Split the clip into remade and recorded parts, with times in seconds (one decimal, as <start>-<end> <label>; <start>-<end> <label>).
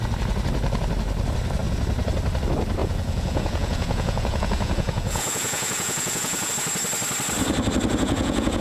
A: 0.0-2.8 recorded; 2.8-6.5 remade; 6.5-7.9 recorded; 7.9-8.6 remade